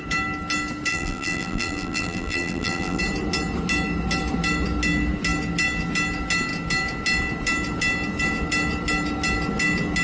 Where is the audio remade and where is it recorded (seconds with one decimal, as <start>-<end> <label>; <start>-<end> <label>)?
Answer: 0.0-0.9 recorded; 0.9-3.0 remade; 3.0-10.0 recorded